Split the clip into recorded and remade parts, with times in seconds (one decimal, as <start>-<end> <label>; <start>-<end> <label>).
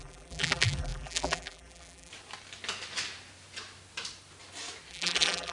0.0-2.1 remade; 2.1-4.9 recorded; 4.9-5.5 remade